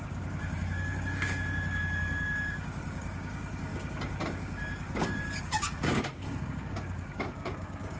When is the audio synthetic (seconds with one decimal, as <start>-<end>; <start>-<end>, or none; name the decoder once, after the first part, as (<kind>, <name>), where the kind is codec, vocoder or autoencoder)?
0.0-8.0 (codec, DAC)